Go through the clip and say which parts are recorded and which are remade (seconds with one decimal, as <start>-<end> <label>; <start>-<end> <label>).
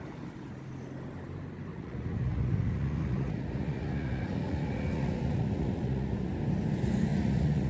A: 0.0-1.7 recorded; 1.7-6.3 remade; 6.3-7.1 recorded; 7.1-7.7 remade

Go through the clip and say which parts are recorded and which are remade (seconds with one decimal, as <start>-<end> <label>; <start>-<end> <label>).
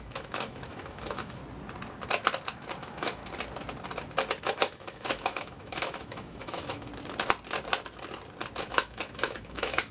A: 0.0-1.4 remade; 1.4-2.8 recorded; 2.8-3.2 remade; 3.2-4.4 recorded; 4.4-6.9 remade; 6.9-8.6 recorded; 8.6-9.9 remade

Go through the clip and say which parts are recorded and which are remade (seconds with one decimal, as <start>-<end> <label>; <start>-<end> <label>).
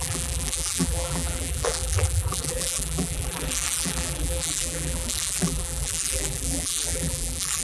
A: 0.0-7.6 remade